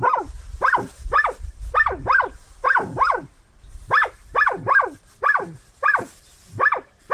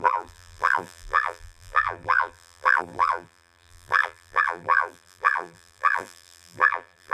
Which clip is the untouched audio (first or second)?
first